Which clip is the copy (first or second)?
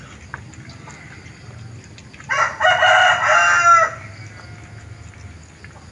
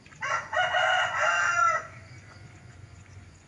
second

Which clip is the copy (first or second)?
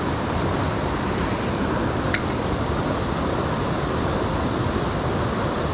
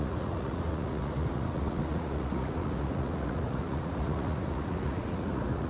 second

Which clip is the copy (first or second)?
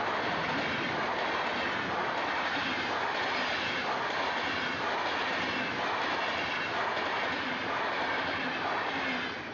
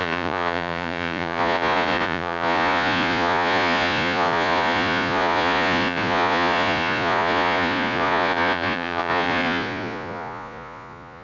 second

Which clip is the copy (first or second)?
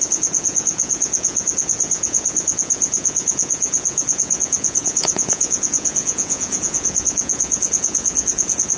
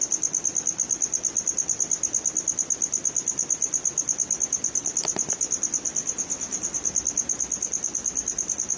first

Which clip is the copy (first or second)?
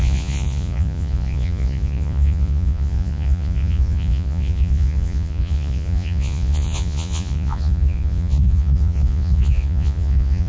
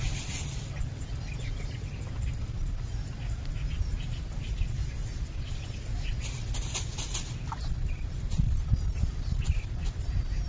first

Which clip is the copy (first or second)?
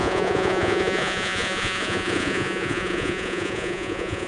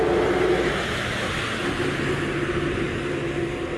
first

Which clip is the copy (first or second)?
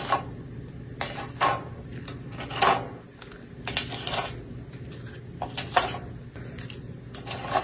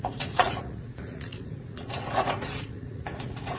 second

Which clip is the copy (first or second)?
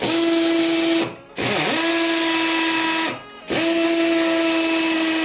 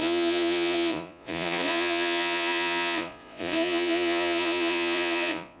second